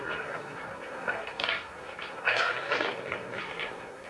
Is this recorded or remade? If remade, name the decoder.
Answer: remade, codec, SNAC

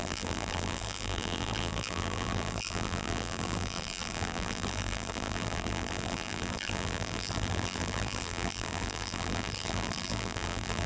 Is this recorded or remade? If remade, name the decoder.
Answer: remade, vocoder, BigVGAN v2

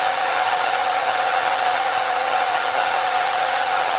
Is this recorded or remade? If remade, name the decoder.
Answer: remade, vocoder, HiFi-GAN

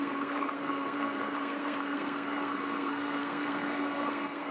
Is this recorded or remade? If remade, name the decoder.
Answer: remade, codec, SNAC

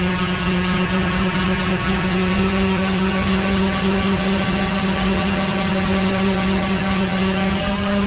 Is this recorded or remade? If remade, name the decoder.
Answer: remade, vocoder, HiFi-GAN